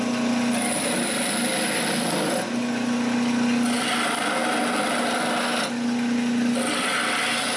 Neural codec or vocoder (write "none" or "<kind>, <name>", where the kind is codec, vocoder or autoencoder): none